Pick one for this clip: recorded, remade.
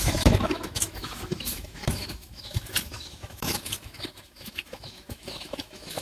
remade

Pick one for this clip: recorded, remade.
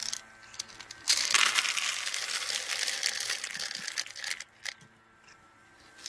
recorded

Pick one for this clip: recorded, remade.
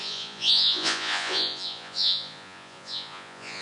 remade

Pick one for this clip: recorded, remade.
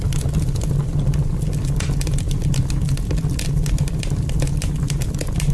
recorded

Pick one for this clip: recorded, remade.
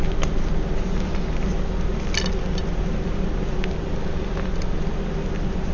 recorded